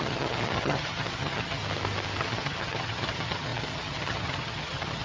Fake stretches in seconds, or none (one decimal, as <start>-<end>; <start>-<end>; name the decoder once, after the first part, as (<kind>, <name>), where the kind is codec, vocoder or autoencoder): 0.0-1.6 (vocoder, HiFi-GAN); 2.2-5.0